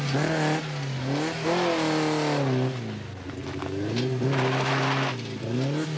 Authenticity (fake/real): real